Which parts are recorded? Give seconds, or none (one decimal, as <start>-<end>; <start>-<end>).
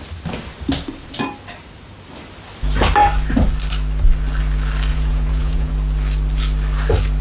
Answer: 0.0-4.9; 5.7-7.2